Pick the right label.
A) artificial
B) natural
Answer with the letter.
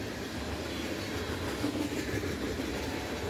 B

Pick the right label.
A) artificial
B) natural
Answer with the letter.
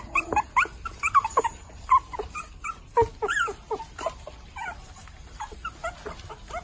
A